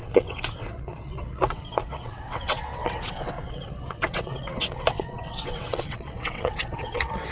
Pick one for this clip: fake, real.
fake